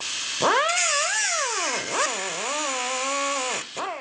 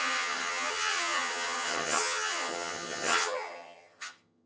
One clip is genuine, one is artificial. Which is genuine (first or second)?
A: first